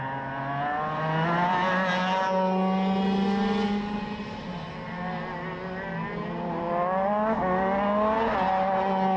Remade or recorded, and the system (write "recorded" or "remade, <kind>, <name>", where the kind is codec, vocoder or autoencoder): recorded